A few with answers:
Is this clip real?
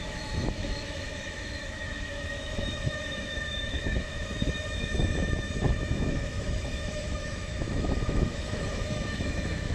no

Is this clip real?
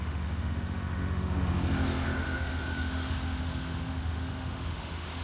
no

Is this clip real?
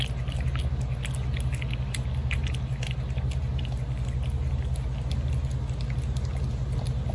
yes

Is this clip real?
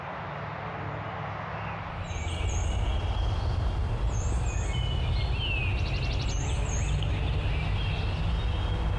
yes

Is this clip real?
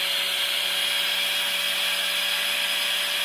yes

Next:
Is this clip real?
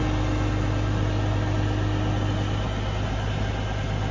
yes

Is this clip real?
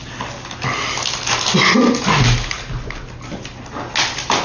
yes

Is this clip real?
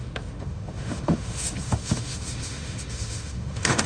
no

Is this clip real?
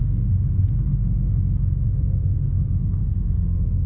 no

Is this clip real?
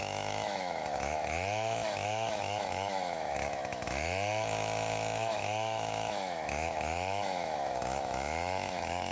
no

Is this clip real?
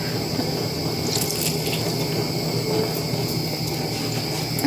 yes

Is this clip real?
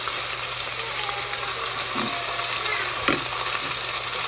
yes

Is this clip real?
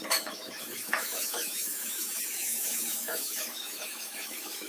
no